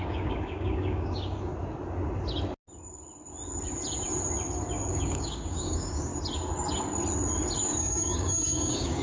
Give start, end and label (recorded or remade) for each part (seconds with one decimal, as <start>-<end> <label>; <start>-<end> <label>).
0.0-1.5 remade; 1.5-4.9 recorded; 4.9-6.1 remade; 6.1-7.8 recorded; 7.8-9.0 remade